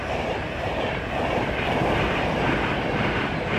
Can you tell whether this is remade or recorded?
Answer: recorded